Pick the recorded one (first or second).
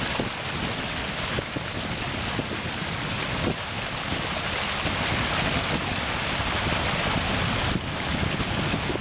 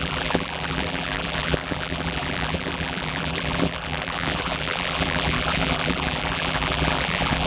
first